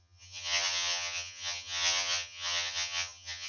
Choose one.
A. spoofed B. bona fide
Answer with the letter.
A